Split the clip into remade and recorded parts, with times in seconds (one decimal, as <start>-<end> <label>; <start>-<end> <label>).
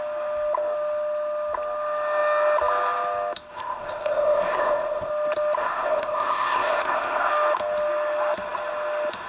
0.0-3.5 recorded; 3.5-5.1 remade; 5.1-5.6 recorded; 5.6-7.3 remade; 7.3-9.3 recorded